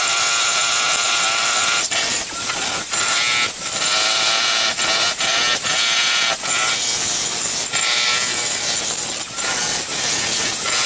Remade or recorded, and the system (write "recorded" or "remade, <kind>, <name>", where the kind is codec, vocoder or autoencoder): recorded